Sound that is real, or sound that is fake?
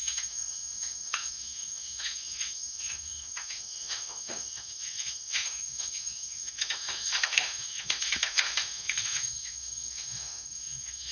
fake